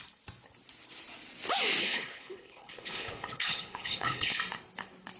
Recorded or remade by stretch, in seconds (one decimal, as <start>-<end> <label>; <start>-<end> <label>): 0.0-1.8 recorded; 1.8-4.4 remade; 4.4-5.2 recorded